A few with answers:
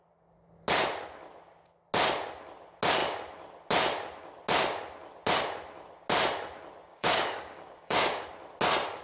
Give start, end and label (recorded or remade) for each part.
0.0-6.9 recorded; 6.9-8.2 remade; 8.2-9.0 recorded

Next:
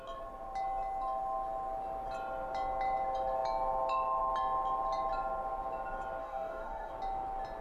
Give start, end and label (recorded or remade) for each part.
0.0-6.2 recorded; 6.2-6.9 remade; 6.9-7.6 recorded